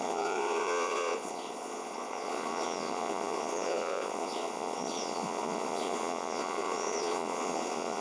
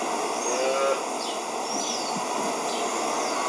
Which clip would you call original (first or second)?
second